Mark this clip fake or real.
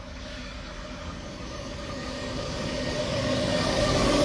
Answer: fake